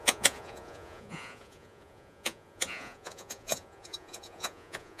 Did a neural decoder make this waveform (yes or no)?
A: yes